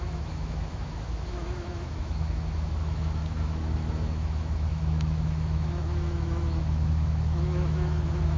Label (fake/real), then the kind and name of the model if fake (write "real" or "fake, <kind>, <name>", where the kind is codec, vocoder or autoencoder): fake, autoencoder, DAC-VAE